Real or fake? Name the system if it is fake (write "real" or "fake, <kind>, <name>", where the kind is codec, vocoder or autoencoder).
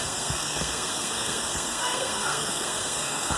fake, codec, SNAC